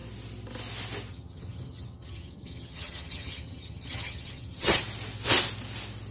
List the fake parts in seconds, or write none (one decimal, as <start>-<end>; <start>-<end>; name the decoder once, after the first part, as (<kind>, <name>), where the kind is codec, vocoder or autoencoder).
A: 1.1-4.8 (vocoder, HiFi-GAN)